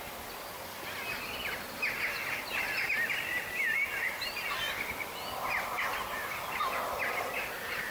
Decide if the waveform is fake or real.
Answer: real